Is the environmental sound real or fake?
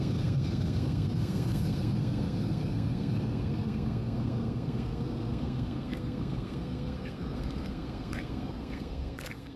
fake